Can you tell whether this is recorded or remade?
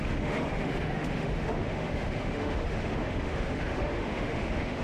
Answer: remade